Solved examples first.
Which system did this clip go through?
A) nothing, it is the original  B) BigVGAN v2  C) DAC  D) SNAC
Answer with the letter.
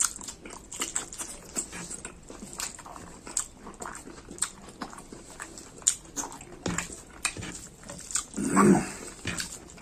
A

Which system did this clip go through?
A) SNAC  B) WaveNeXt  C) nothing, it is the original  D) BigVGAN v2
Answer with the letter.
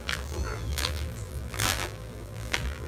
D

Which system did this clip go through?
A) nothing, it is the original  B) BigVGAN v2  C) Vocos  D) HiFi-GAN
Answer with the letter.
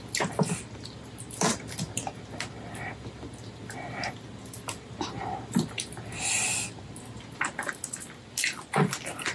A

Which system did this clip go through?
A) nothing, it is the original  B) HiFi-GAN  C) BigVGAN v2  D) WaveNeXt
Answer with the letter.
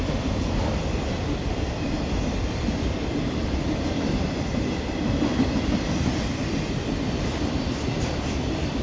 C